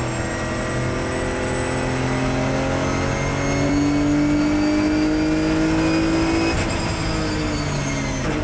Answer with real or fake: real